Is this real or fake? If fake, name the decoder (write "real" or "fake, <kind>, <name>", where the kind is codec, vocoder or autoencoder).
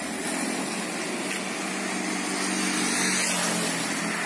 real